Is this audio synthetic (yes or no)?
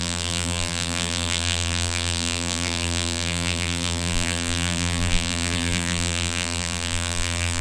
yes